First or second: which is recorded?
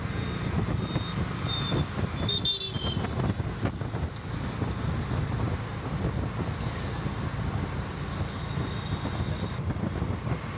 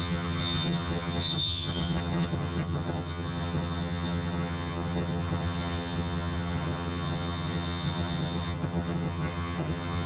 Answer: first